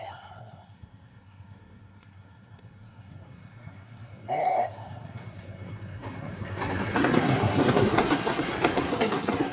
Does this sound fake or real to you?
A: fake